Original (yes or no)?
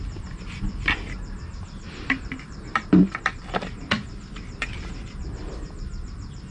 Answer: no